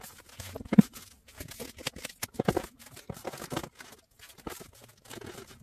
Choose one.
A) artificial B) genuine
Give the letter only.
B